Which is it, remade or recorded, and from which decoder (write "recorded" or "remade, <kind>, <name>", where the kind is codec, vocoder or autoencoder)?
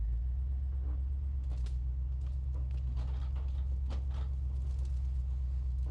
recorded